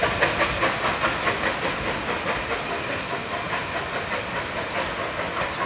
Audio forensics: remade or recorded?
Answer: recorded